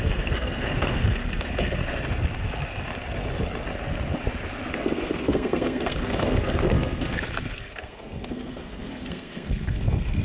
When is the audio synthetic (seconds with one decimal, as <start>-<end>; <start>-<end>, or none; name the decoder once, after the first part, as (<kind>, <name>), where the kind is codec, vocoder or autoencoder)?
0.0-1.8 (codec, SNAC); 4.7-10.2